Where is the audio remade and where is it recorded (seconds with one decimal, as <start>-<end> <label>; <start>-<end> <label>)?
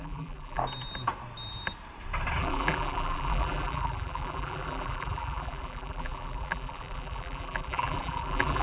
0.0-0.6 remade; 0.6-2.4 recorded; 2.4-8.6 remade